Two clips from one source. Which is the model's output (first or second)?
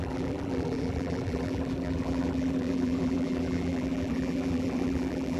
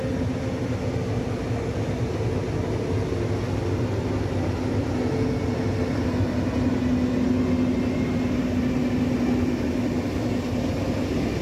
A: first